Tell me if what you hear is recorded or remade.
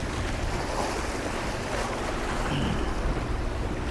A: recorded